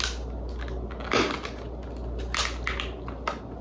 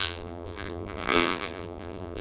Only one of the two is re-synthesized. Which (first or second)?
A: second